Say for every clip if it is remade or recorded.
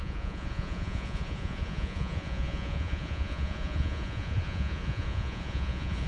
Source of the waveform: remade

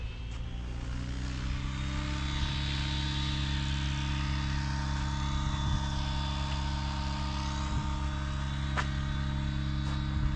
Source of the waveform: recorded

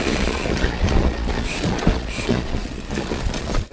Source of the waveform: remade